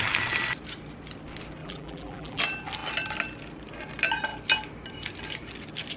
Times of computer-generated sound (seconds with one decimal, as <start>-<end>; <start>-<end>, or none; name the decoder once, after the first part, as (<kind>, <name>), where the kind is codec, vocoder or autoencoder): 1.6-2.4 (vocoder, BigVGAN v2)